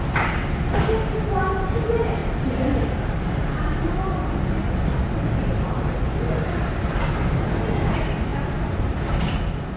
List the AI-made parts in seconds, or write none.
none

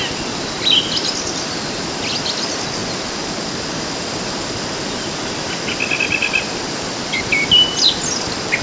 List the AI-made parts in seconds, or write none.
none

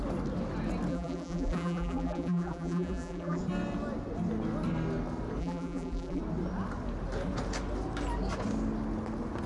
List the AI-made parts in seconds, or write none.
0.9-3.4 (vocoder, BigVGAN v2); 5.4-6.2

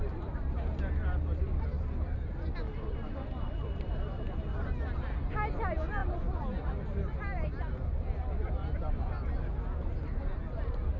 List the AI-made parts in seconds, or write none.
none

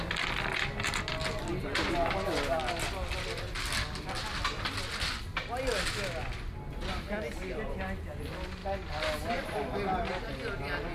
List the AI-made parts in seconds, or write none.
none

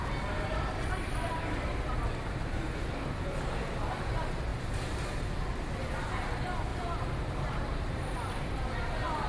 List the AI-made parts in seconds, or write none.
4.5-5.0 (vocoder, BigVGAN v2); 6.7-8.5

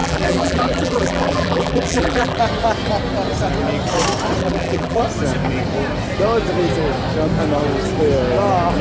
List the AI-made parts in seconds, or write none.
0.0-2.4 (vocoder, BigVGAN v2); 4.4-5.0

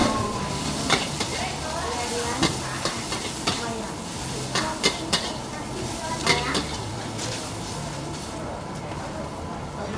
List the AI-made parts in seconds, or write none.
0.0-1.3 (vocoder, BigVGAN v2); 6.2-10.0